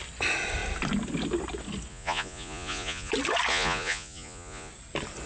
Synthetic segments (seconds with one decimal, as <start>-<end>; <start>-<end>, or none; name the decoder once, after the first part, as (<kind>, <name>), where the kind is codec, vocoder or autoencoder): 1.9-3.1 (vocoder, Vocos); 3.5-4.7